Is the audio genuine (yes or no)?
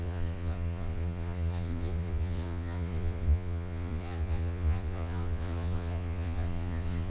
no